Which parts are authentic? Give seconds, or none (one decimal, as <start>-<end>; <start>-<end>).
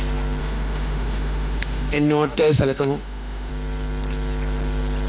0.0-0.4; 3.5-5.1